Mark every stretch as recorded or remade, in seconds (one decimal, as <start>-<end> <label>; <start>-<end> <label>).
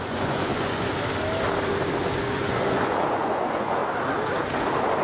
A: 0.0-0.9 remade; 0.9-2.2 recorded; 2.2-3.8 remade; 3.8-5.0 recorded